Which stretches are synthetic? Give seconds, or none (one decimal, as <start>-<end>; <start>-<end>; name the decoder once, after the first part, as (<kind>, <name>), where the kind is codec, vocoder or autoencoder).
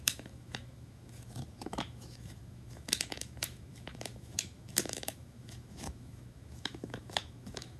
0.0-7.8 (autoencoder, DAC-VAE)